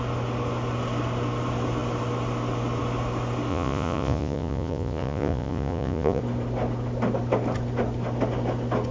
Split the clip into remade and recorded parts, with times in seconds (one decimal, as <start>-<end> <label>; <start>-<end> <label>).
0.0-3.5 recorded; 3.5-6.2 remade; 6.2-8.9 recorded